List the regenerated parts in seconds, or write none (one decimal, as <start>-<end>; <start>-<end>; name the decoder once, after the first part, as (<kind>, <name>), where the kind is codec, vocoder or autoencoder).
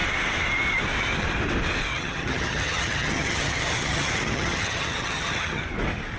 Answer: 1.9-5.6 (vocoder, HiFi-GAN)